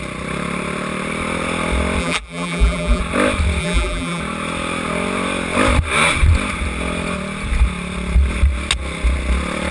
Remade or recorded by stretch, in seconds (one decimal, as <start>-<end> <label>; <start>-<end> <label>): 0.0-2.0 recorded; 2.0-3.0 remade; 3.0-3.6 recorded; 3.6-4.2 remade; 4.2-9.7 recorded